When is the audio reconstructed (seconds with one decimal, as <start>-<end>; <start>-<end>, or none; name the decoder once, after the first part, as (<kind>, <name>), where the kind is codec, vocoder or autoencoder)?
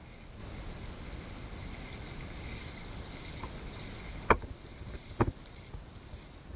none